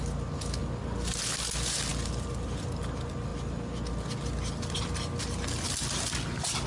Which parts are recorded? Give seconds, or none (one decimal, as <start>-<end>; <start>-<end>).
0.0-1.9; 2.8-6.7